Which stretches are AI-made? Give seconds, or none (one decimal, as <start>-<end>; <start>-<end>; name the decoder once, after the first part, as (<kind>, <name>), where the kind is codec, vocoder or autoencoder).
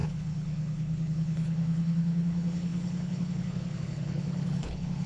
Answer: 0.0-5.1 (codec, HILCodec)